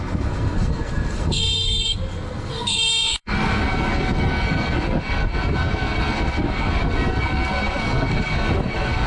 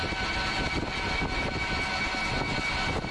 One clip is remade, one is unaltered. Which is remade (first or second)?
first